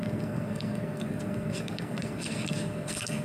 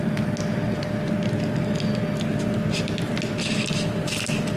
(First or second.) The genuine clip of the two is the second